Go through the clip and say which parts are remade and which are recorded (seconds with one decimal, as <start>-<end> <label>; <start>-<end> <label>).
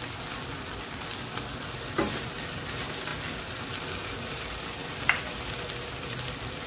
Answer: 0.0-6.7 recorded